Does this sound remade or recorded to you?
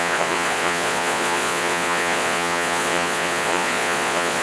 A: remade